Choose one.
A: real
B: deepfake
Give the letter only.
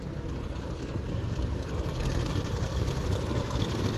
B